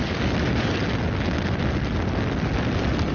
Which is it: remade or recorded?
recorded